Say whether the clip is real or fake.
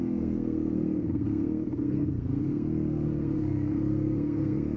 fake